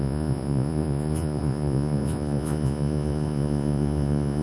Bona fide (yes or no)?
no